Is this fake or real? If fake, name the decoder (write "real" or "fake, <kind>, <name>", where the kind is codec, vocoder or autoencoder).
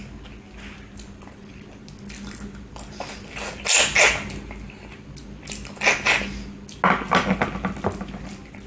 real